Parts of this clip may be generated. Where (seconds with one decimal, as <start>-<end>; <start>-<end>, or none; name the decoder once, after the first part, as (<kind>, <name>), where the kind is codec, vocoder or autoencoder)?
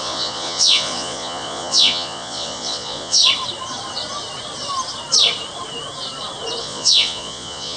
0.0-3.2 (vocoder, Vocos); 6.6-7.8